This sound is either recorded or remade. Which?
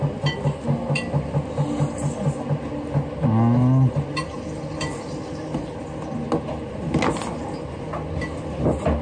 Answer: recorded